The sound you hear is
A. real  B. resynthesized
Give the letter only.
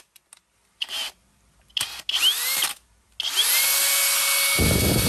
A